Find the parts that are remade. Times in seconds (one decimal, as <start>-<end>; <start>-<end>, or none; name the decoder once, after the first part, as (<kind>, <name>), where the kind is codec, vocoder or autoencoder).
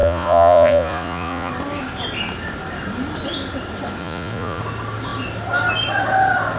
0.0-1.5 (vocoder, Vocos); 4.0-4.6